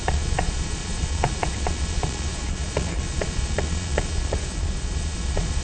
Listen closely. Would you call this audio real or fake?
fake